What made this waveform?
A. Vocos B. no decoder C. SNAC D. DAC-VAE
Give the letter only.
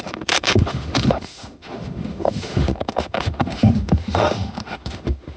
D